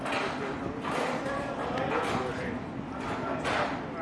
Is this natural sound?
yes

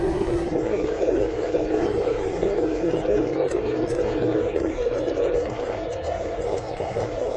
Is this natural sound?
no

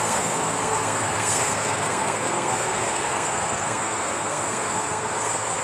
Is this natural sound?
no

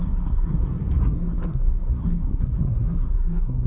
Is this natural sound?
no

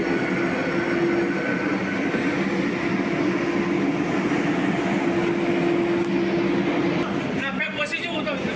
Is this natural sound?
yes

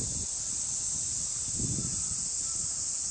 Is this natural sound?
yes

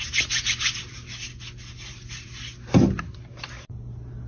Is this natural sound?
yes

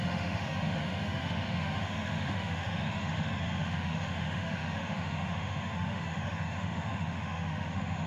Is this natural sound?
no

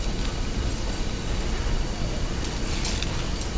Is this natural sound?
yes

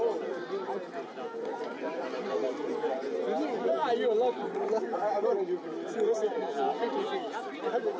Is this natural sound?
yes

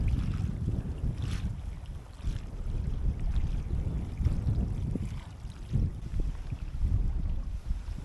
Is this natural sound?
no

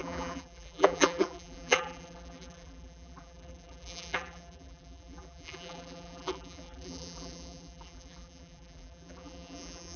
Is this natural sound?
no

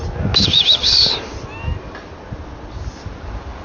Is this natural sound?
yes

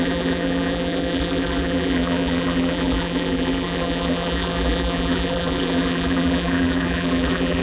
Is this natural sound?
no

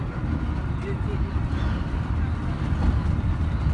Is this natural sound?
yes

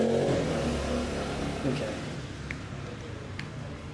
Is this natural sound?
yes